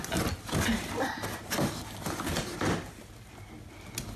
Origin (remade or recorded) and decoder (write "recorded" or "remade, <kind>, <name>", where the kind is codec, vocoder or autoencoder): recorded